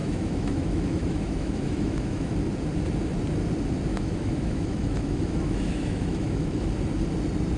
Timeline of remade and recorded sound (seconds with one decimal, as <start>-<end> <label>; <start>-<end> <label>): 0.0-2.3 remade; 2.3-3.9 recorded; 3.9-6.7 remade; 6.7-7.6 recorded